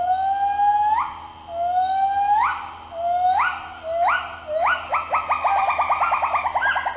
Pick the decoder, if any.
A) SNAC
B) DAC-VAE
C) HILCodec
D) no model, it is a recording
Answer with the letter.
D